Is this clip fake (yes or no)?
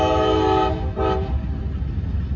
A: no